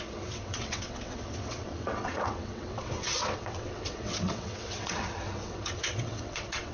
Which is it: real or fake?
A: fake